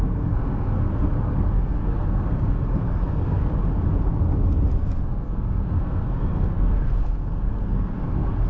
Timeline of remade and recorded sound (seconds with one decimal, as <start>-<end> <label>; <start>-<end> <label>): 0.0-3.5 remade; 3.5-4.8 recorded; 4.8-8.5 remade